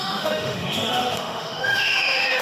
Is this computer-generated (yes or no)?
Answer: yes